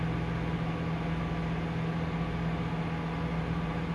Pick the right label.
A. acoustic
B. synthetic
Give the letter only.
A